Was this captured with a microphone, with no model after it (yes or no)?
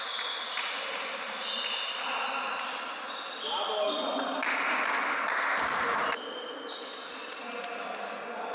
yes